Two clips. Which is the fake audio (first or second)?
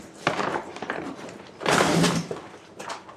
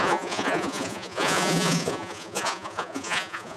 second